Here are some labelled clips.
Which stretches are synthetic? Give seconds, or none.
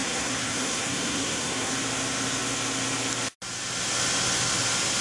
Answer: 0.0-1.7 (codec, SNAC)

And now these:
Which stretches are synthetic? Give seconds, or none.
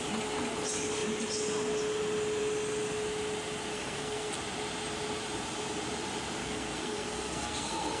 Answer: 3.7-4.3 (codec, SNAC); 6.4-8.0